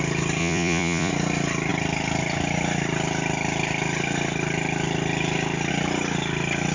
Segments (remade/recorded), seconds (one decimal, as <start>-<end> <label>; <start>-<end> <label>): 0.0-0.4 recorded; 0.4-1.1 remade; 1.1-6.7 recorded